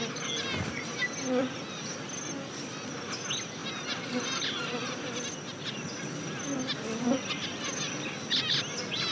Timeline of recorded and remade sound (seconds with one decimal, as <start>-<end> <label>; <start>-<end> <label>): 0.0-9.1 recorded